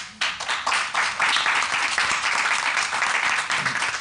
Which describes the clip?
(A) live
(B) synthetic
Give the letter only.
A